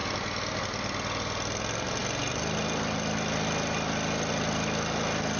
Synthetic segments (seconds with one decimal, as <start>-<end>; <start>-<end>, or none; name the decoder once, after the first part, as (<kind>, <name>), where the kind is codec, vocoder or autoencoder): none